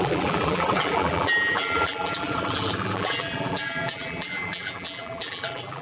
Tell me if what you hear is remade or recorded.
remade